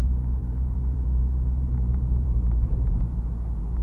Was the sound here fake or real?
fake